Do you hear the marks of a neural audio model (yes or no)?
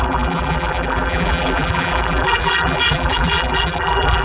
yes